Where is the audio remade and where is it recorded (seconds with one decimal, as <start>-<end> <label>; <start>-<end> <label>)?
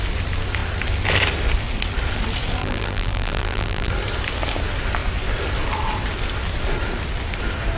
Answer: 0.0-2.6 recorded; 2.6-3.9 remade; 3.9-7.8 recorded